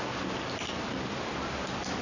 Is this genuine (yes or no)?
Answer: yes